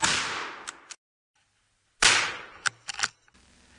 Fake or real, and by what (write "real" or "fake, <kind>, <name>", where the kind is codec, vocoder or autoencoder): real